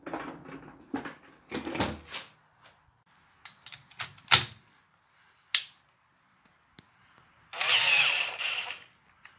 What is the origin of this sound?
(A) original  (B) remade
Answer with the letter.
A